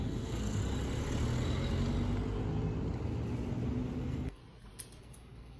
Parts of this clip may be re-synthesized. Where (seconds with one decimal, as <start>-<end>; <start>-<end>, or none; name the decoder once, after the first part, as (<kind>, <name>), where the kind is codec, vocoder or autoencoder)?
0.0-0.6 (codec, SNAC); 4.0-4.4; 5.0-5.6